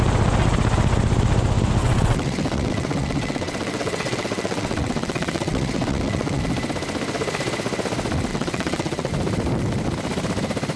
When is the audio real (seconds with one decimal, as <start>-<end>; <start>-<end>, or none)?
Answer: 0.0-1.8; 6.4-8.3; 9.1-10.8